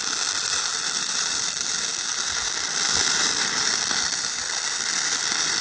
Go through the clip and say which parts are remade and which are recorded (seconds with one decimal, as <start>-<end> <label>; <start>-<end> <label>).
0.0-0.7 recorded; 0.7-1.4 remade; 1.4-1.9 recorded; 1.9-5.6 remade